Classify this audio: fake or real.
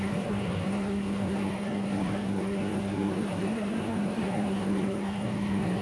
fake